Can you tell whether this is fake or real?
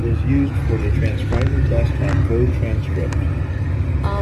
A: real